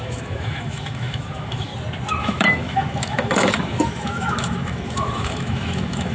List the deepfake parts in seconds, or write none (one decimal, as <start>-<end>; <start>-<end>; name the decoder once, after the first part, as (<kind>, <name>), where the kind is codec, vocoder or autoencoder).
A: 0.0-1.7 (autoencoder, DAC-VAE); 2.2-6.1